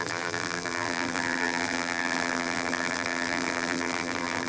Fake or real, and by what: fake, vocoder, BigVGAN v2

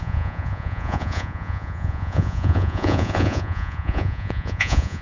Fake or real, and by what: fake, vocoder, Vocos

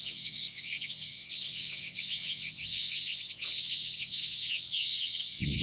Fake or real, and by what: fake, vocoder, WaveNeXt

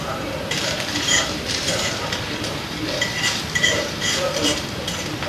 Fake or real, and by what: fake, vocoder, BigVGAN v2